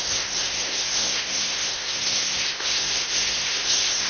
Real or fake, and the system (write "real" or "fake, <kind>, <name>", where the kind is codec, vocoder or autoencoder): fake, codec, SNAC